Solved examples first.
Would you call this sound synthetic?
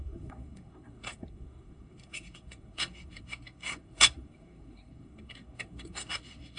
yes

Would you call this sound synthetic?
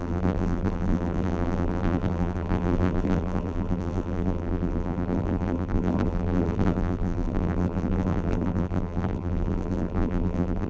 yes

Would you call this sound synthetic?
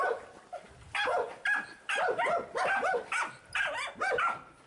no